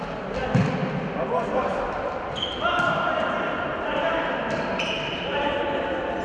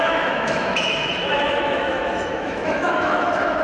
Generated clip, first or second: second